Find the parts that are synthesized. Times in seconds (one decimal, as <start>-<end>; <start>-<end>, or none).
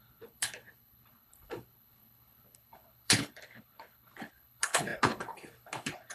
0.0-6.1